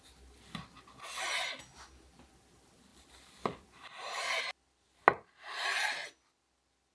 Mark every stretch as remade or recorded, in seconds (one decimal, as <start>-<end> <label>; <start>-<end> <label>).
0.0-2.9 recorded; 2.9-4.4 remade; 4.4-6.9 recorded